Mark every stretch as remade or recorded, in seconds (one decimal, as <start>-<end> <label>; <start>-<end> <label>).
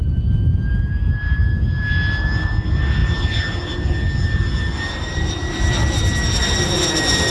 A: 0.0-7.3 recorded